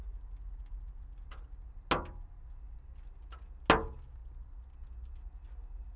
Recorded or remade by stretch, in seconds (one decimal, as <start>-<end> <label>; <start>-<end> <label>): 0.0-6.0 recorded